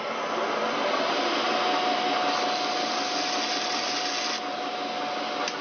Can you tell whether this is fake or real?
real